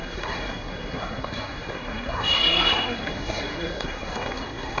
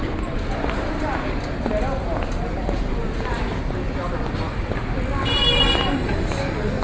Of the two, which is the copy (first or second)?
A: first